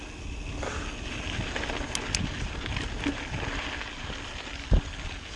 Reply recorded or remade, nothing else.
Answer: recorded